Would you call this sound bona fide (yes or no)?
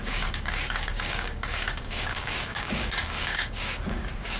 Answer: no